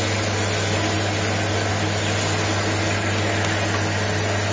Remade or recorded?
recorded